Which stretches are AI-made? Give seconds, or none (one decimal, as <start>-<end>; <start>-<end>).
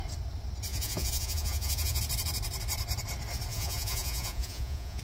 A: 0.7-2.0; 3.5-5.0